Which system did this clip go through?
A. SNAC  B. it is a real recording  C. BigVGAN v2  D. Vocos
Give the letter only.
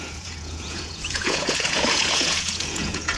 D